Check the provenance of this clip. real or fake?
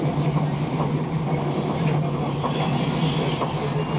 real